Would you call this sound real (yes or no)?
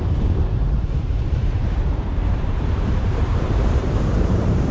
no